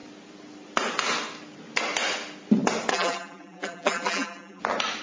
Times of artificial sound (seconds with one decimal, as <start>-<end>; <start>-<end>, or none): 2.9-4.6